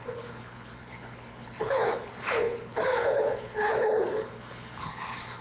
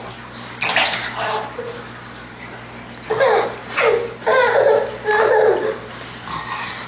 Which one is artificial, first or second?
first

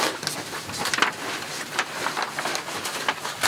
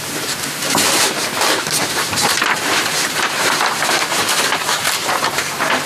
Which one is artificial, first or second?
second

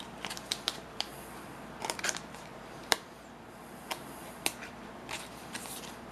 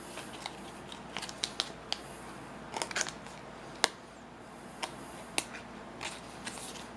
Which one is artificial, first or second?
first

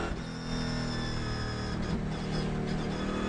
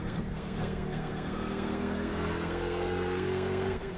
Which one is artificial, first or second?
second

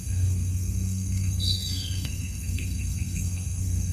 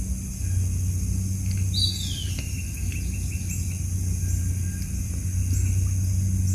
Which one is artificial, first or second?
first